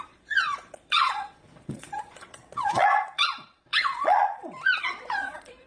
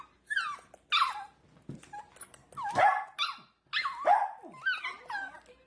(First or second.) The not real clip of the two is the first